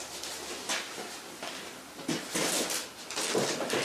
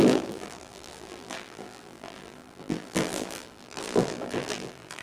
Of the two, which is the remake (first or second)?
second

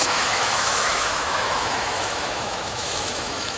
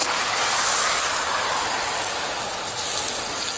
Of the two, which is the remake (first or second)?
first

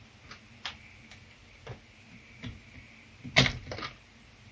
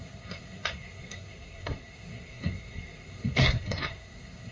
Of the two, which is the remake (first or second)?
second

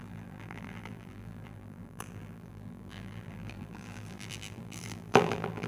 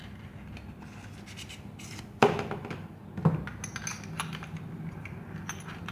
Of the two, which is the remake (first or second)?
first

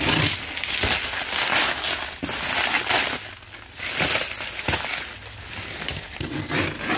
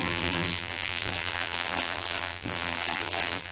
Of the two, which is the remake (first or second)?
second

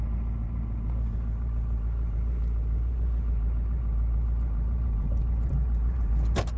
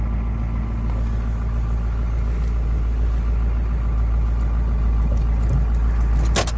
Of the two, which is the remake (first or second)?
first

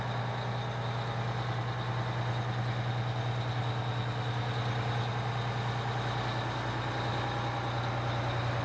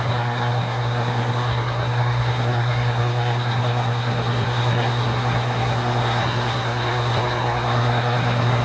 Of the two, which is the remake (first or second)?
second